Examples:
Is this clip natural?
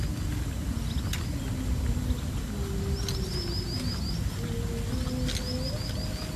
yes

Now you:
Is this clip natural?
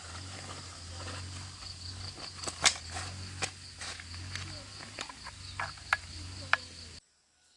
yes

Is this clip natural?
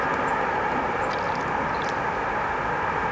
yes